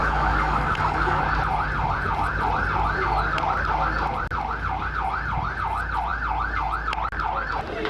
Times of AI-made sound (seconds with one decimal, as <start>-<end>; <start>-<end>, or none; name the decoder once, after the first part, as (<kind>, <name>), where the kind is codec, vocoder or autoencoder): 0.0-1.2 (codec, DAC)